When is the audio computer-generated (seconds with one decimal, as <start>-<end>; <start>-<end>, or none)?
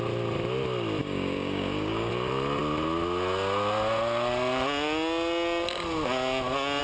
1.0-2.1